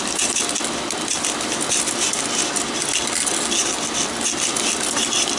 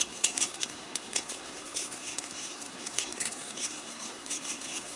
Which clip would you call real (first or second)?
first